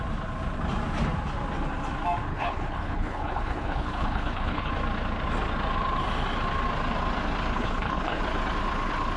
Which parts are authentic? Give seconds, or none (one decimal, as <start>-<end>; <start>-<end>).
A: 0.0-2.3; 4.7-7.5; 8.2-9.2